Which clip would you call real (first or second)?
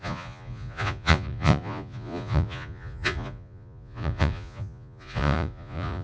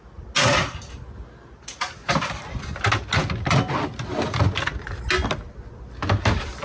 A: second